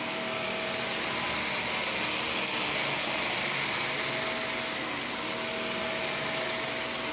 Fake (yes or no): no